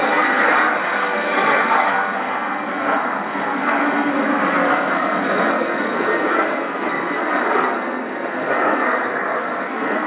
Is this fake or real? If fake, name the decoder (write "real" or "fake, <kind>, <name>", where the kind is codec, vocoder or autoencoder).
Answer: fake, codec, SNAC